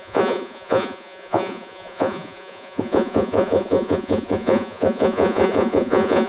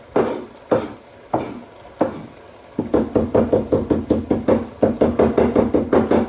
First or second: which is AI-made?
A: first